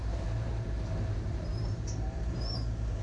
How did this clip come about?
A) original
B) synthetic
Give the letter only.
B